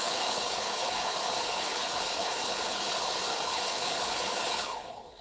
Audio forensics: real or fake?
fake